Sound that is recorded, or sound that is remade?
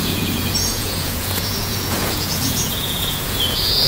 remade